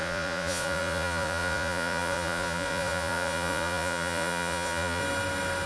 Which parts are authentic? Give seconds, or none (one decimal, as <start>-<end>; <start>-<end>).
5.0-5.7